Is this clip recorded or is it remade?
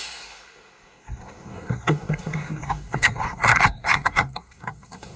remade